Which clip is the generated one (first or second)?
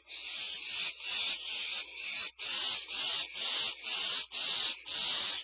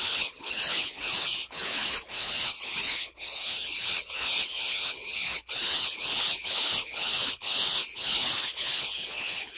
second